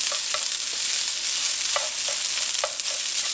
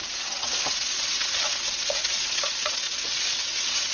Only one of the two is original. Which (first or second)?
first